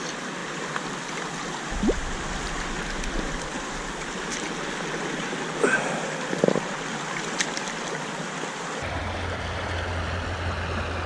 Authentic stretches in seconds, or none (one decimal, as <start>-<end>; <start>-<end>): 0.0-11.1